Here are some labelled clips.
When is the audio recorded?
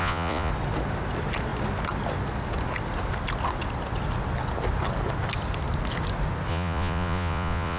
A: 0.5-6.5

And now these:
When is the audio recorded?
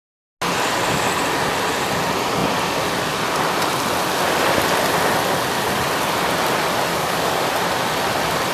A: 0.0-6.9; 7.5-8.5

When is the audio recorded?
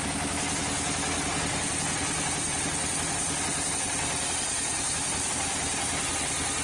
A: 0.0-6.6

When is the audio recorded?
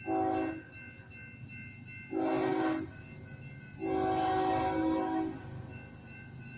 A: 0.0-6.6